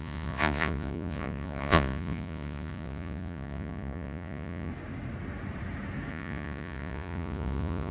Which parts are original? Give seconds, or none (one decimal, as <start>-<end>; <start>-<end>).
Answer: 4.7-6.1